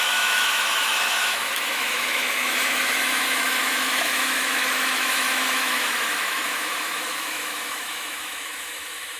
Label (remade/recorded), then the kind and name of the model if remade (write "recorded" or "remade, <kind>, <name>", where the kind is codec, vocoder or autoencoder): remade, autoencoder, DAC-VAE